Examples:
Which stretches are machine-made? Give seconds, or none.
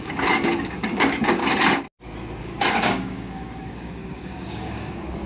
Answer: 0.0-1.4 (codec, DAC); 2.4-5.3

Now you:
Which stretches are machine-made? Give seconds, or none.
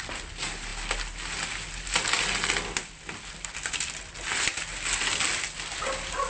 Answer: none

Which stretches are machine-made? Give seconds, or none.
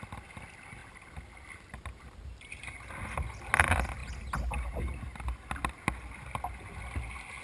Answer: none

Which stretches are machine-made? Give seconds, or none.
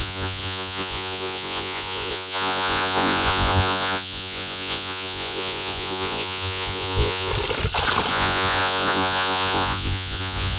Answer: 0.0-7.3 (vocoder, Vocos); 8.1-10.6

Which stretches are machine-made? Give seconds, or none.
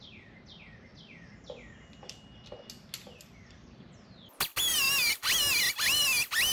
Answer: none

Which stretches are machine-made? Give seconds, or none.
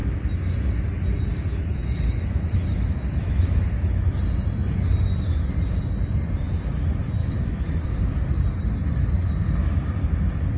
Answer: 1.3-4.2 (autoencoder, DAC-VAE); 7.2-8.0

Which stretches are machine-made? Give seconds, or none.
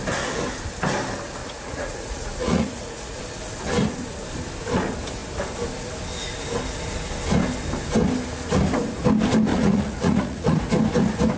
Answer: 1.4-3.2 (vocoder, Vocos); 9.5-10.6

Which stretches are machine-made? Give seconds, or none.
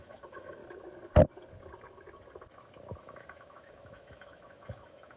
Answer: 0.0-0.6 (autoencoder, DAC-VAE); 3.0-5.2